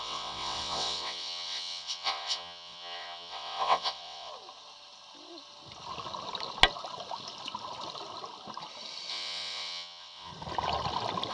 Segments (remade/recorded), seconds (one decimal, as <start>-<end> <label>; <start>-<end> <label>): 0.0-4.3 remade; 4.3-9.1 recorded; 9.1-10.3 remade; 10.3-11.3 recorded